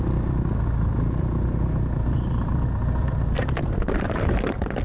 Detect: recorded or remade remade